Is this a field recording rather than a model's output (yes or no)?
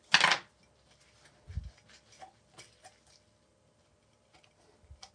yes